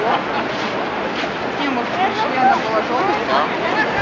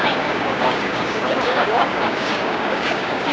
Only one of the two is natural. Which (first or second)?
first